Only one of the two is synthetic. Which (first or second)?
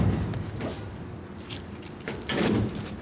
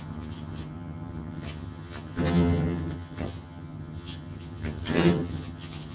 second